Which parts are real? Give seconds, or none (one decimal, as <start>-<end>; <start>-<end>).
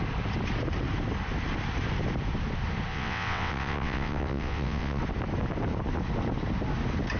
0.0-2.9; 5.0-7.2